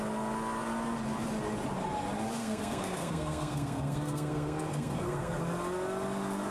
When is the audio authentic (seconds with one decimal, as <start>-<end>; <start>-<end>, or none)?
0.0-2.4; 5.4-6.5